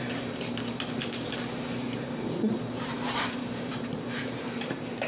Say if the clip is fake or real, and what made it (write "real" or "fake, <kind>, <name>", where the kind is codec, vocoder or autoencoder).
fake, vocoder, BigVGAN v2